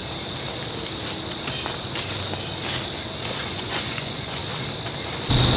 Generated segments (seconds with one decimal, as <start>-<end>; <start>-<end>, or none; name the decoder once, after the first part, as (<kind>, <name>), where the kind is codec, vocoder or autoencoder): 3.4-4.4 (vocoder, Vocos)